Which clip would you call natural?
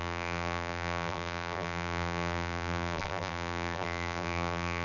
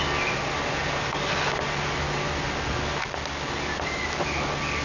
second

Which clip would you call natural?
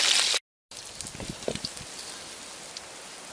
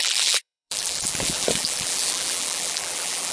first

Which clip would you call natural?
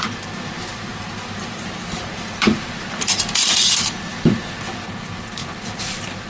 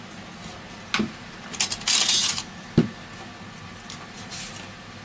second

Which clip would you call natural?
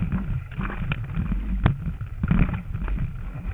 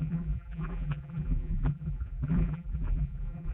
first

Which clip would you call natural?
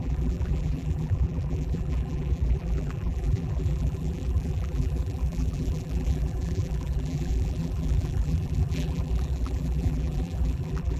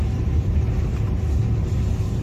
second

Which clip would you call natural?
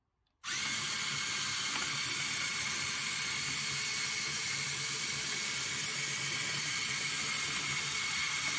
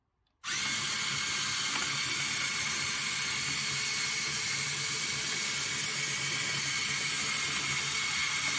second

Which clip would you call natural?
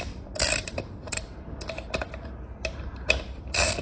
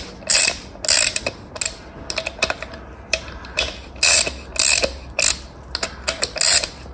second